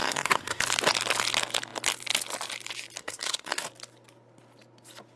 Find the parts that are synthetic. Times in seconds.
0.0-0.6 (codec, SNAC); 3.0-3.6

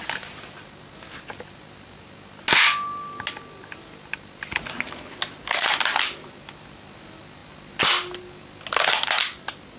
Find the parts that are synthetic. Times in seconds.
none

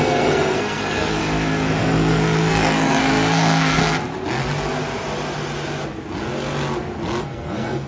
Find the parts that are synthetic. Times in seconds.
0.0-1.2 (codec, SNAC); 1.8-3.8; 7.2-7.9